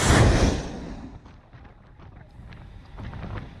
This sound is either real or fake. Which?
fake